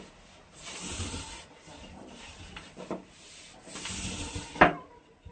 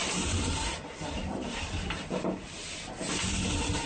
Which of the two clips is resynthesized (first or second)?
second